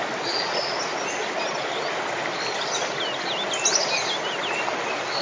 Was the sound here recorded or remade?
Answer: recorded